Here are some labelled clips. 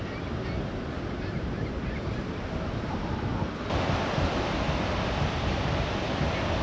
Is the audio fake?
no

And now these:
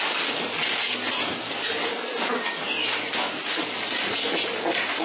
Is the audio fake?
no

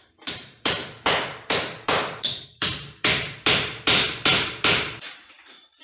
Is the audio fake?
yes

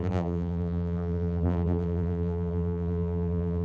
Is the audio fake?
yes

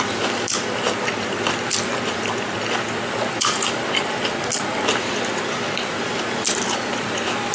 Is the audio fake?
yes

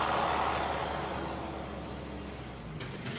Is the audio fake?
no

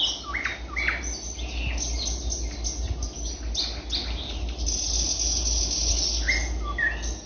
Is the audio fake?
no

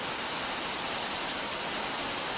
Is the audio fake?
yes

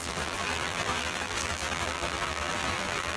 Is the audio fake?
yes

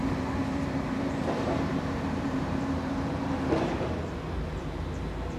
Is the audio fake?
yes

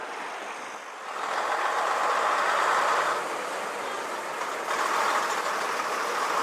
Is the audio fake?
yes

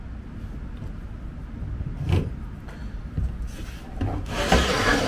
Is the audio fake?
no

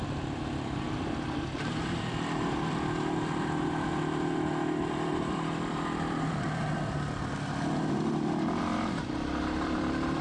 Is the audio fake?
yes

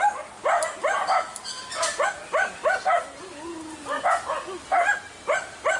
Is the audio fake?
no